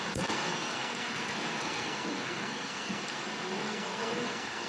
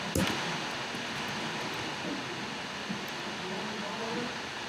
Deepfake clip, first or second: first